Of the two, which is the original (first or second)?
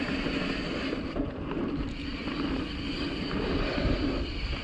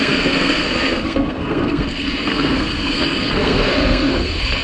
first